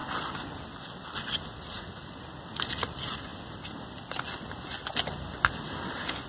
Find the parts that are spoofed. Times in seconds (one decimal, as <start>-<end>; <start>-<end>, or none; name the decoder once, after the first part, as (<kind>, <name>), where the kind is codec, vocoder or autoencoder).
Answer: none